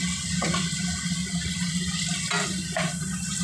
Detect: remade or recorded recorded